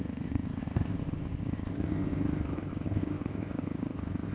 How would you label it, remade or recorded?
remade